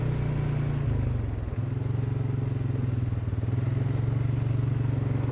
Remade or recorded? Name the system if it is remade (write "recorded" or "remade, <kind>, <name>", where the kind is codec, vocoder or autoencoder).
recorded